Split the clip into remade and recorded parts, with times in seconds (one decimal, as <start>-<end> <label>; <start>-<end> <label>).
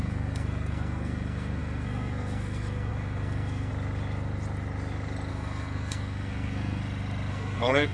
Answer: 0.0-3.7 remade; 3.7-5.3 recorded; 5.3-6.8 remade; 6.8-7.3 recorded; 7.3-7.9 remade